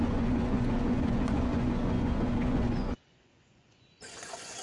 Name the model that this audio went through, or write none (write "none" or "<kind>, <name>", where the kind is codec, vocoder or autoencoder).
vocoder, Vocos